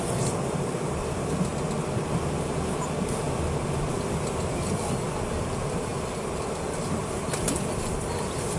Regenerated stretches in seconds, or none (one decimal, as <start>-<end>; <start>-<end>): 0.0-1.5; 3.9-8.6